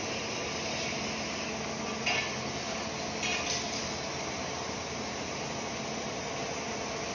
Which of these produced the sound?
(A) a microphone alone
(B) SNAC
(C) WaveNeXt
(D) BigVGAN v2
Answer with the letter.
A